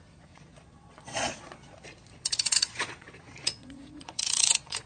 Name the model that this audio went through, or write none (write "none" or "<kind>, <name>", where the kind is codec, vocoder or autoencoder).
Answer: vocoder, Vocos